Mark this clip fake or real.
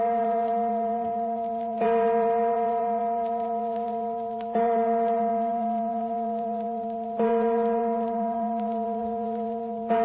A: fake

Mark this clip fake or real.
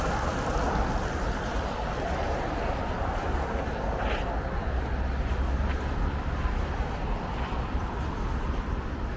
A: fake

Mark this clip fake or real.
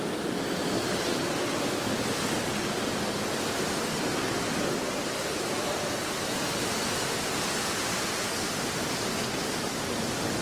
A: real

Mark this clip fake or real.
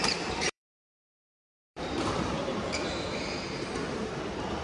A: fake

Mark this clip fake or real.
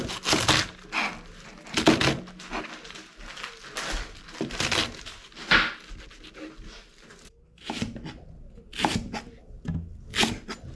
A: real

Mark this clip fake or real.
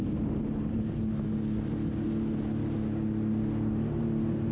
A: real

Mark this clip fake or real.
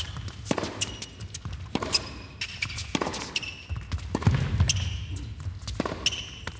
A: real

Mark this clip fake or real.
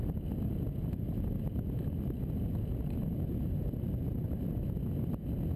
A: real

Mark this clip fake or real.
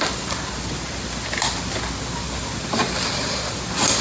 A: real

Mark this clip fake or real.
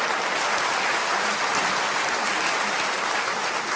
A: real